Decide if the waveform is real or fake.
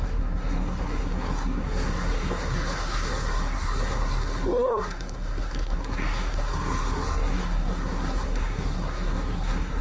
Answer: fake